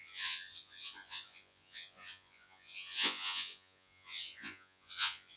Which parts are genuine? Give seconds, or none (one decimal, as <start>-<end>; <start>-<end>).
none